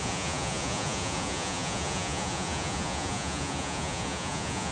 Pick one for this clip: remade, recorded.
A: remade